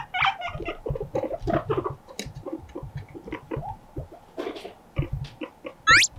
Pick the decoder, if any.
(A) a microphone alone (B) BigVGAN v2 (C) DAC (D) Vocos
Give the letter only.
A